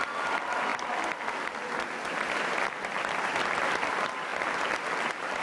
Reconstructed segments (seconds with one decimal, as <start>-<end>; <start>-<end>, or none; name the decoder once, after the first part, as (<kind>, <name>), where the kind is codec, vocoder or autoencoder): none